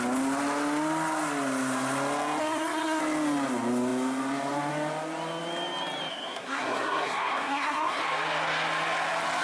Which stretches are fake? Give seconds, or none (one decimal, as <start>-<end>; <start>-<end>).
2.4-3.0; 6.1-8.0

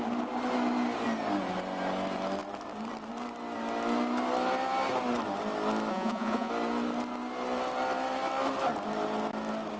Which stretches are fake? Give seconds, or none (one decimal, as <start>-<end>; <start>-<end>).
5.9-6.5

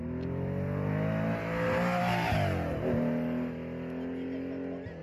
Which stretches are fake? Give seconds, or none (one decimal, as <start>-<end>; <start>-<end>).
none

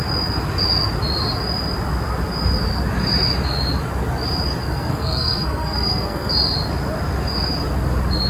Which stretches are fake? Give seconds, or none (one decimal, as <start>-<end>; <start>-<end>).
4.6-6.3

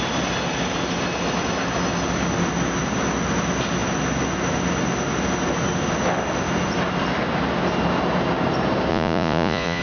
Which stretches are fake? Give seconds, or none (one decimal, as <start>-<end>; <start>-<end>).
8.9-9.8